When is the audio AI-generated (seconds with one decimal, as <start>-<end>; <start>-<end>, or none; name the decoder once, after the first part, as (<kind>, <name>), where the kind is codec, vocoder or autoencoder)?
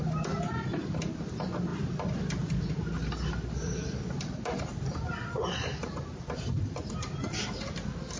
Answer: none